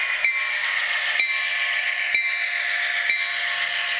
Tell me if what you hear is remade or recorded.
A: recorded